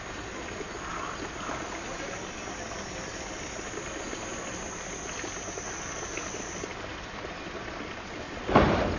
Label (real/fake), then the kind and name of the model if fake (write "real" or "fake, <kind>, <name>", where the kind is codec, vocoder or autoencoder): real